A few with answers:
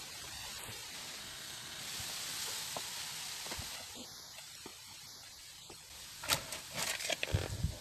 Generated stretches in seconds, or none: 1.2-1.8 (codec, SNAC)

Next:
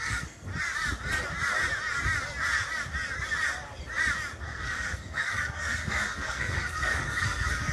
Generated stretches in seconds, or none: 0.0-0.5 (codec, SNAC); 4.4-7.7

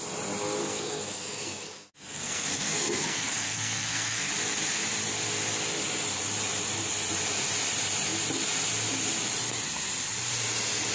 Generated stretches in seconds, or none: 0.6-4.3 (codec, SNAC)